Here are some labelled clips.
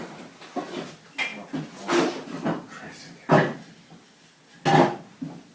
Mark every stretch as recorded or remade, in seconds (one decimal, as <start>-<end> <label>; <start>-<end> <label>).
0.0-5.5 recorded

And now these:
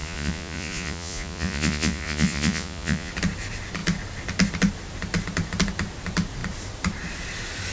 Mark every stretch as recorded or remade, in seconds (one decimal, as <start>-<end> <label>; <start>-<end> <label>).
0.0-3.1 remade; 3.1-7.7 recorded

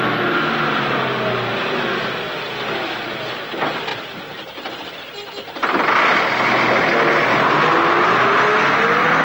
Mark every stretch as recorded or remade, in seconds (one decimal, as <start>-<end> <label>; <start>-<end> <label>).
0.0-9.2 recorded